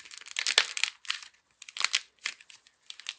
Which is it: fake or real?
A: real